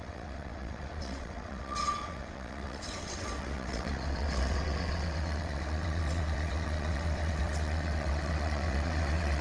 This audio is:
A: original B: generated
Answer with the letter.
B